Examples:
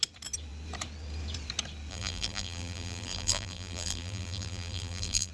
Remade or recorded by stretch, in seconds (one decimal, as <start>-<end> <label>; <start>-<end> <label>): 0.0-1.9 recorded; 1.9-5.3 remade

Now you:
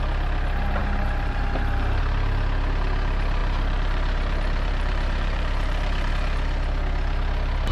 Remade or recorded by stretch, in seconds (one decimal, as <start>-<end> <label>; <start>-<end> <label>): 0.0-0.8 recorded; 0.8-2.0 remade; 2.0-3.4 recorded; 3.4-6.1 remade; 6.1-7.7 recorded

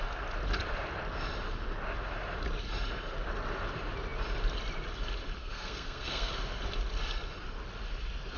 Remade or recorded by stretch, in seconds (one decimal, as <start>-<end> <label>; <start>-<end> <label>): 0.0-5.4 recorded; 5.4-6.3 remade; 6.3-8.4 recorded

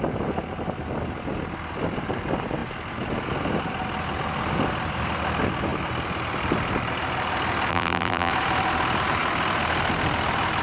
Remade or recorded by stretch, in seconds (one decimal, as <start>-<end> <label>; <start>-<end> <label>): 0.0-7.7 recorded; 7.7-8.3 remade; 8.3-10.6 recorded

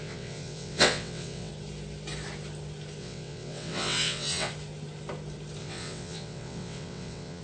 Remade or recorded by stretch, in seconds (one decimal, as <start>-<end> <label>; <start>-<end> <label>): 0.0-1.5 remade; 1.5-3.0 recorded; 3.0-4.5 remade; 4.5-5.6 recorded; 5.6-7.4 remade

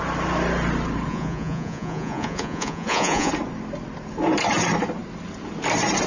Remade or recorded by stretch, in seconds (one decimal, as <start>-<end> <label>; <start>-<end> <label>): 0.0-1.1 recorded; 1.1-3.3 remade; 3.3-6.1 recorded